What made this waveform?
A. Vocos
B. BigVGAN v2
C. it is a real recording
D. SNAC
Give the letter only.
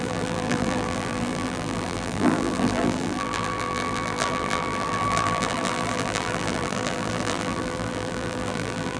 B